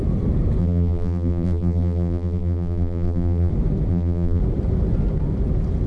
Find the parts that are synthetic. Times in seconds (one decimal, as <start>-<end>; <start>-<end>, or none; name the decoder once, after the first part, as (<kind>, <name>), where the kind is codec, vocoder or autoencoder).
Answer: 0.6-3.5 (vocoder, BigVGAN v2); 3.9-4.4